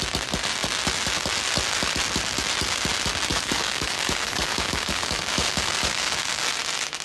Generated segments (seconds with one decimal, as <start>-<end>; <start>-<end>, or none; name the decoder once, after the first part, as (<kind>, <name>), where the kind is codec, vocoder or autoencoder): 3.3-6.4 (codec, DAC)